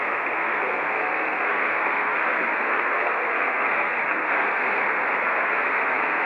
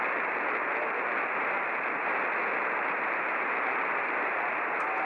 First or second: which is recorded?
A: second